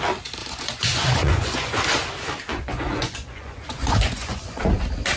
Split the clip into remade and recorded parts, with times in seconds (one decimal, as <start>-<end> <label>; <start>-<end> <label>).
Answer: 0.0-0.4 recorded; 0.4-1.8 remade; 1.8-2.5 recorded; 2.5-4.6 remade; 4.6-5.2 recorded